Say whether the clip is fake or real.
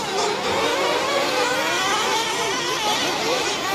real